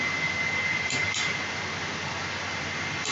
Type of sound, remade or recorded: recorded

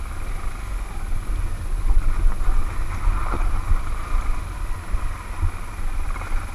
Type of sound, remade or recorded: recorded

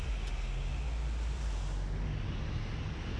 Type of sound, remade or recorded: recorded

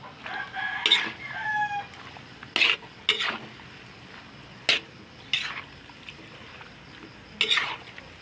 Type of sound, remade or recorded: recorded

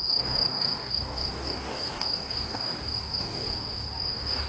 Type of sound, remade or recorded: remade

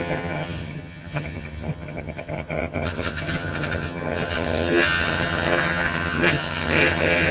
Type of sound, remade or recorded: remade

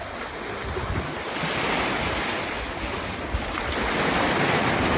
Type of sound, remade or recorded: recorded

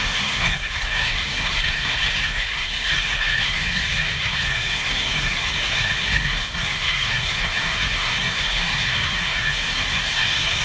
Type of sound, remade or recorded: remade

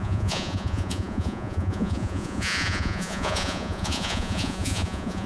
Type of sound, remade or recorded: remade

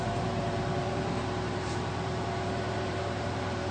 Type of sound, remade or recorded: remade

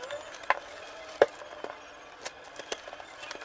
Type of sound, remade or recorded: recorded